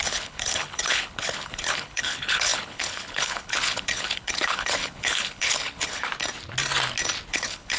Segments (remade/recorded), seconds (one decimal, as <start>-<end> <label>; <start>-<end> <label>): 0.0-6.1 remade; 6.1-7.3 recorded; 7.3-7.8 remade